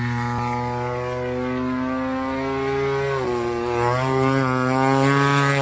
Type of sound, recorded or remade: recorded